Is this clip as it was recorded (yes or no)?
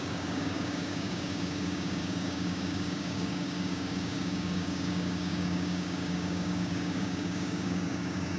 no